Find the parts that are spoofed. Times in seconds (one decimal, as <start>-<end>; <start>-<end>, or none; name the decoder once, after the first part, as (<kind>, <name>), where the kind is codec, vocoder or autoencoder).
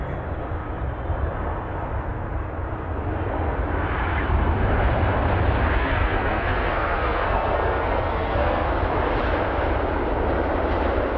5.8-8.8 (codec, SNAC)